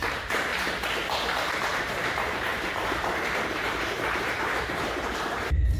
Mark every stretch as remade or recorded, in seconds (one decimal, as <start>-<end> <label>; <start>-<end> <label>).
0.0-0.5 remade; 0.5-1.6 recorded; 1.6-5.8 remade